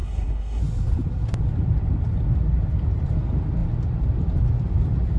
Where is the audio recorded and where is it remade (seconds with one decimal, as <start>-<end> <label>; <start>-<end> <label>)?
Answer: 0.0-0.6 remade; 0.6-5.2 recorded